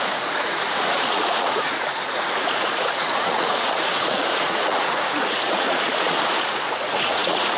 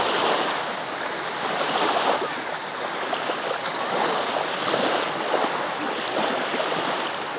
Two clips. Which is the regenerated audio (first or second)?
first